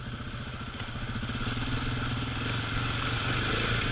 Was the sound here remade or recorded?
recorded